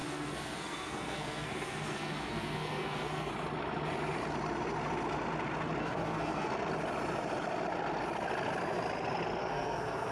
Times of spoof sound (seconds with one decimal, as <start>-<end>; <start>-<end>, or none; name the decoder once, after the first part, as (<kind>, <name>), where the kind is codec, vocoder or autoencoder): 0.0-3.3 (codec, SNAC); 5.8-6.5; 9.4-10.1